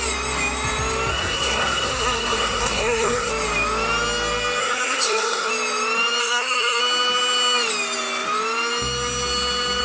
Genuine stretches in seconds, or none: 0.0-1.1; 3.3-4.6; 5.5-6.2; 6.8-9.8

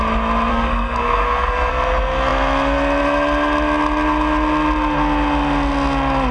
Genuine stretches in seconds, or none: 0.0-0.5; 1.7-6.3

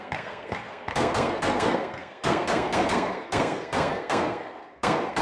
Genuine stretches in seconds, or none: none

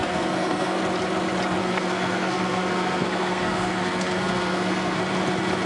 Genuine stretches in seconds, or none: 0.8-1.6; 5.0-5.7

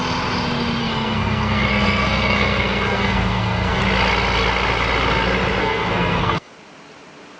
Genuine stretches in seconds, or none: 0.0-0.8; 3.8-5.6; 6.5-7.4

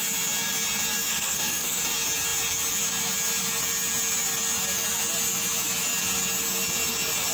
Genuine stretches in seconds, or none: 0.0-1.1; 1.8-7.3